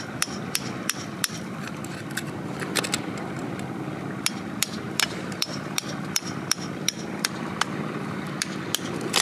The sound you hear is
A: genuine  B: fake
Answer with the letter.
B